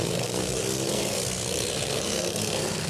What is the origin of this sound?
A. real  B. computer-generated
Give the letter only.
B